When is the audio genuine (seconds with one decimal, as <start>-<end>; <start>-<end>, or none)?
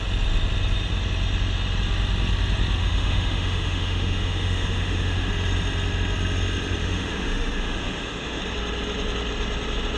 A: 0.0-2.8; 5.3-6.8; 8.4-10.0